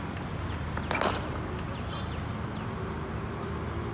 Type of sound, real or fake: real